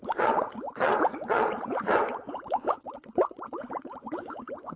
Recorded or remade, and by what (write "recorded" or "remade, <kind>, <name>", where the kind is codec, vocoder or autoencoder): remade, vocoder, WaveNeXt